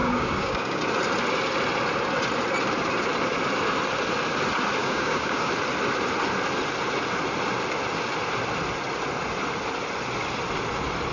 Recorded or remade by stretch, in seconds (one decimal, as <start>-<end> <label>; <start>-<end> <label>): 0.0-0.8 remade; 0.8-4.8 recorded; 4.8-5.5 remade; 5.5-11.1 recorded